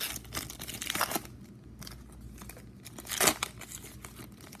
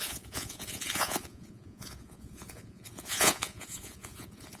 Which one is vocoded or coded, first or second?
second